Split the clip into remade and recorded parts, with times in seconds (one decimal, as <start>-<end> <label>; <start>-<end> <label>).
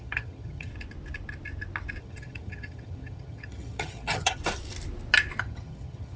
0.0-0.7 remade; 0.7-2.0 recorded; 2.0-4.4 remade; 4.4-5.4 recorded; 5.4-6.2 remade